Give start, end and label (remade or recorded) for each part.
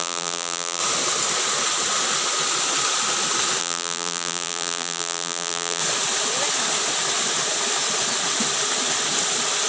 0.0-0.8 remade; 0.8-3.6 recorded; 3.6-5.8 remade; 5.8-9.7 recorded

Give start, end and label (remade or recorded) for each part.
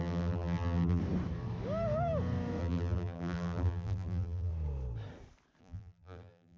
0.0-1.0 remade; 1.0-2.6 recorded; 2.6-4.5 remade; 4.5-5.6 recorded; 5.6-6.6 remade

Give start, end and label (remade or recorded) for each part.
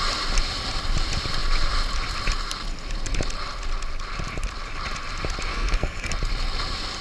0.0-5.5 recorded; 5.5-6.1 remade; 6.1-7.0 recorded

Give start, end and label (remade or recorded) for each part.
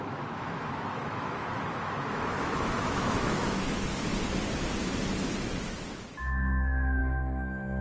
0.0-3.9 remade; 3.9-5.6 recorded; 5.6-7.8 remade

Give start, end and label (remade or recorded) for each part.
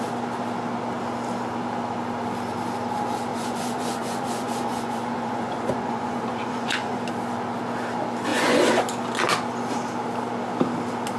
0.0-3.3 recorded; 3.3-7.1 remade; 7.1-8.3 recorded; 8.3-8.8 remade; 8.8-11.2 recorded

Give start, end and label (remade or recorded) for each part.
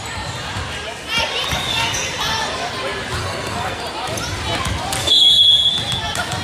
0.0-1.7 recorded; 1.7-2.2 remade; 2.2-3.2 recorded; 3.2-3.8 remade; 3.8-5.0 recorded; 5.0-5.7 remade; 5.7-6.4 recorded